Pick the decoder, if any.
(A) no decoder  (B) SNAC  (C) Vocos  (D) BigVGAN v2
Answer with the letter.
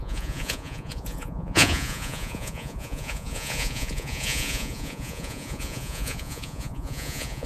C